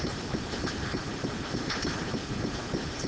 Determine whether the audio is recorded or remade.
remade